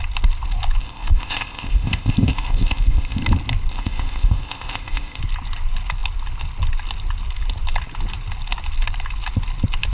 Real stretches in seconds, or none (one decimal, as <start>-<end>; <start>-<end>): 0.0-0.8; 3.2-3.7; 5.2-9.9